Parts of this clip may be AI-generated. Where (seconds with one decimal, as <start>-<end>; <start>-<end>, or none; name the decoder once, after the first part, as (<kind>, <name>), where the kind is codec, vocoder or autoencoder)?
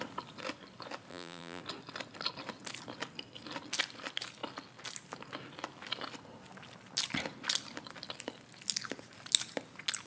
1.1-1.6 (vocoder, BigVGAN v2)